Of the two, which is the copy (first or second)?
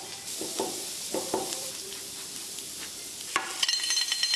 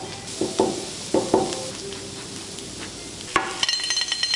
first